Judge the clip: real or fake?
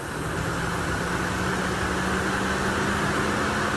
real